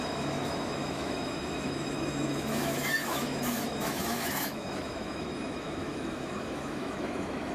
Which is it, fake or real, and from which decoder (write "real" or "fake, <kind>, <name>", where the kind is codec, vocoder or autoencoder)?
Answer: fake, autoencoder, DAC-VAE